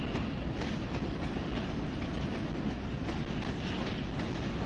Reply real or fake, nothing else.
real